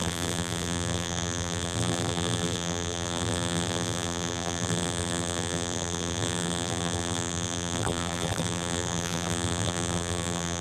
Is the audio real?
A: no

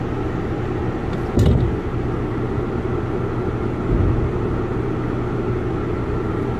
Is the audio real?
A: yes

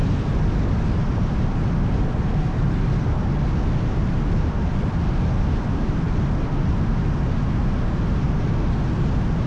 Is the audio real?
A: yes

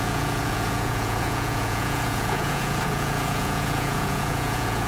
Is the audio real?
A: no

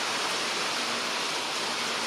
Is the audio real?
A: yes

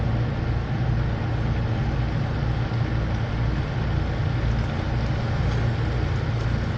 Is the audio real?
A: yes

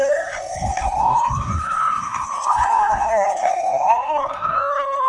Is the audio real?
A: no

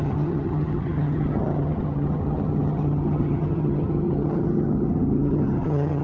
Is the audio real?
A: no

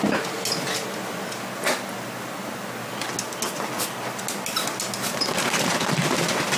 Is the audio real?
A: yes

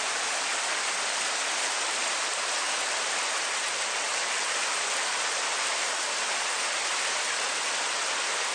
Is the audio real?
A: yes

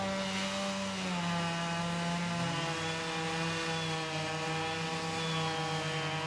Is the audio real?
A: yes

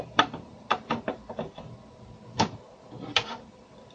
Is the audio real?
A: no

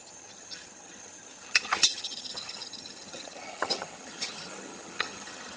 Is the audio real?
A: no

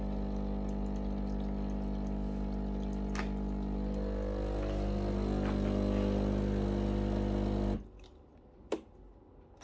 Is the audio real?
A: yes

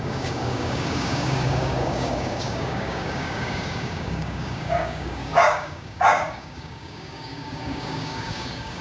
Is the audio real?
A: no